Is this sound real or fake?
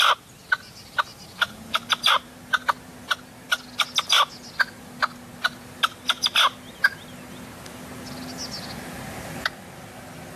real